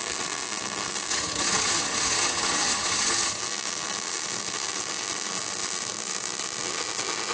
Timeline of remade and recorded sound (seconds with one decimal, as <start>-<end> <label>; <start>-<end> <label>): 0.0-1.1 recorded; 1.1-3.4 remade; 3.4-7.3 recorded